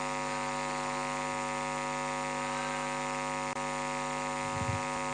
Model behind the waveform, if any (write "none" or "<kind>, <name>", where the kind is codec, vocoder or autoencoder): none